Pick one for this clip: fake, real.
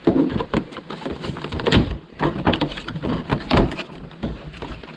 fake